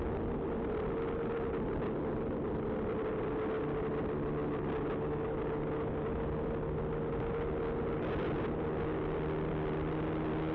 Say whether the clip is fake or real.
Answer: real